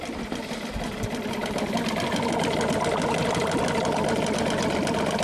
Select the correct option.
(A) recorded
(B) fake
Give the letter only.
A